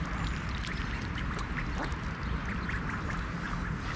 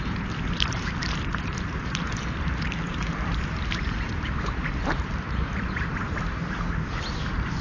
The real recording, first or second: first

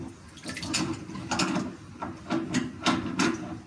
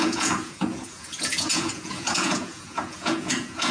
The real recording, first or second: first